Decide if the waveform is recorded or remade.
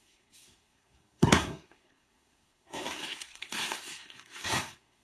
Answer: remade